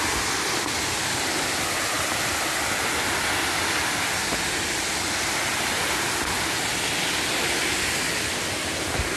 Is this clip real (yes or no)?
yes